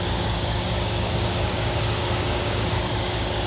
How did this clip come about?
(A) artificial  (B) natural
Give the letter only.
A